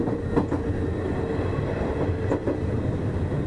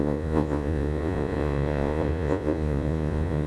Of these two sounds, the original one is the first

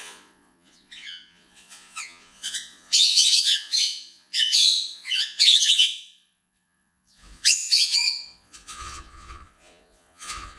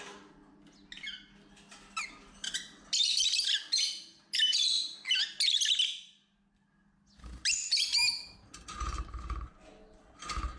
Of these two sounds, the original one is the second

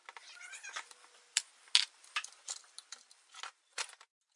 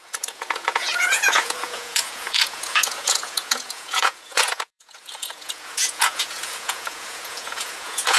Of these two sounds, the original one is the first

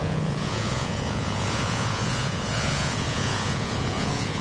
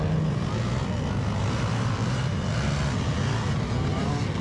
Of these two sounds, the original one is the second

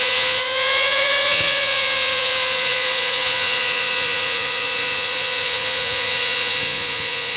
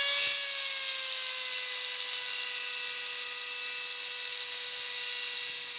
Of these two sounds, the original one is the second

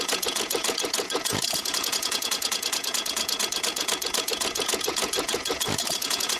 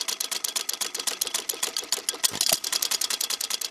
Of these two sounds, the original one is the second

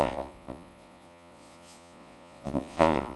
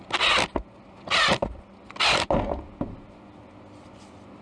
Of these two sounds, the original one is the second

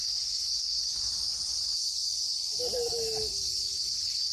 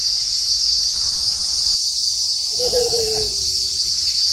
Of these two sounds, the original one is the first